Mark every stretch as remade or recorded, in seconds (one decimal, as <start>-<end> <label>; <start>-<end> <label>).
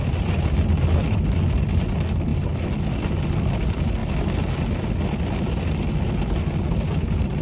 0.0-7.4 recorded